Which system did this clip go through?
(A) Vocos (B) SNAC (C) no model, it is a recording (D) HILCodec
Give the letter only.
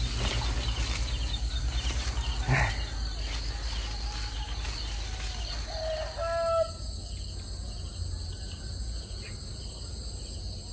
C